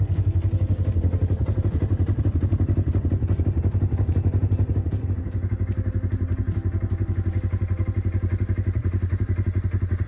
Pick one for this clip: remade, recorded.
recorded